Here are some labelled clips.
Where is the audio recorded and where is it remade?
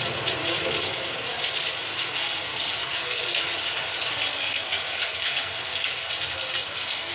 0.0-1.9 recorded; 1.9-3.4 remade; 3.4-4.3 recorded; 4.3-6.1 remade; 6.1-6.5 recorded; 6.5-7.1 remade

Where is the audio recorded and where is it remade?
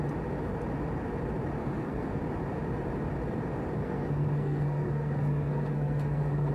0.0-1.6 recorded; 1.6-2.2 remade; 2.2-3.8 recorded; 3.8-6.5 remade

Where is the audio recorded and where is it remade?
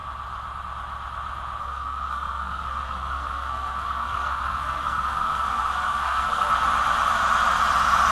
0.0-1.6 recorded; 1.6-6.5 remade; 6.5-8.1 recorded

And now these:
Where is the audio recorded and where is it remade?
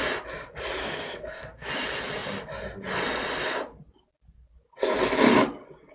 0.0-0.8 recorded; 0.8-1.7 remade; 1.7-5.9 recorded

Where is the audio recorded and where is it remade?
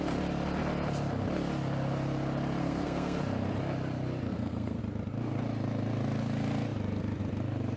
0.0-2.6 recorded; 2.6-3.2 remade; 3.2-4.3 recorded; 4.3-4.8 remade; 4.8-7.8 recorded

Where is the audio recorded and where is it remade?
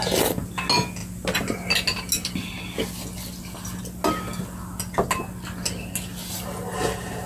0.0-7.3 recorded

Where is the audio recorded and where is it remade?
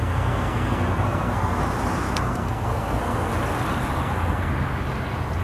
0.0-1.6 remade; 1.6-2.1 recorded; 2.1-3.3 remade; 3.3-4.0 recorded; 4.0-4.5 remade; 4.5-5.4 recorded